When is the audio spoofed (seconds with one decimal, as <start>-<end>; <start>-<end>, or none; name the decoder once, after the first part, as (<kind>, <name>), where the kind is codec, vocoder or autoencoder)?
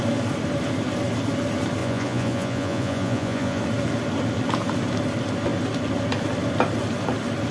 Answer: 1.8-3.6 (vocoder, Vocos)